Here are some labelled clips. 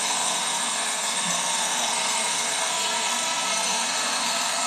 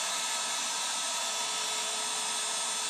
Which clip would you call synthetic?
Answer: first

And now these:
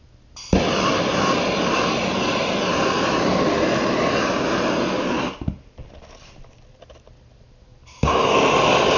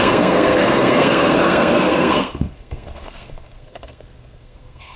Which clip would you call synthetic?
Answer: second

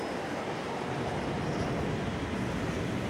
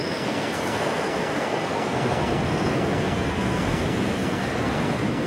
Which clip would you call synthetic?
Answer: second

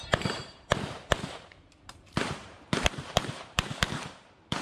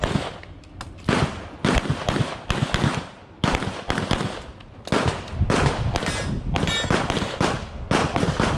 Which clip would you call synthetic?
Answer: first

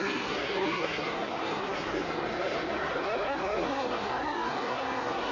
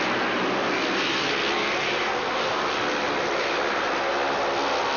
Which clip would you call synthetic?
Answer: first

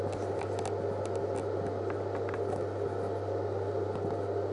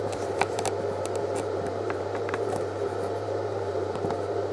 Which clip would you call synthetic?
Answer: second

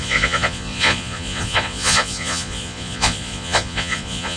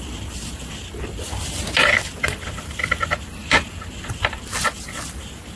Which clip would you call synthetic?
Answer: first